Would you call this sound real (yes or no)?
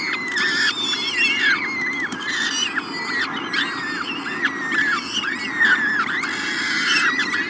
yes